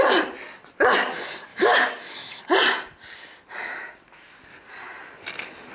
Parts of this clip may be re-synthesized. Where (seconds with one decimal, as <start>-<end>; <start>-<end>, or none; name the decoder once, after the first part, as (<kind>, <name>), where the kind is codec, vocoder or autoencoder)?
1.5-2.4 (autoencoder, DAC-VAE)